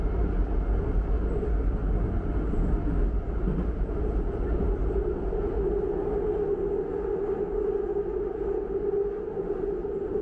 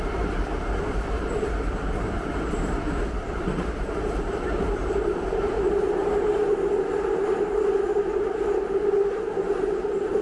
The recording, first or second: first